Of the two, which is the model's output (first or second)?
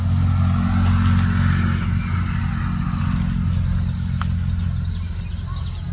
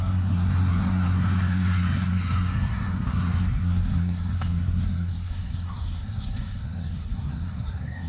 second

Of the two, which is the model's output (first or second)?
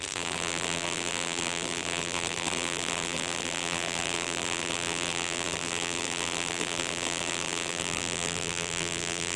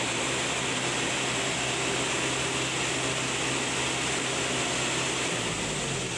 first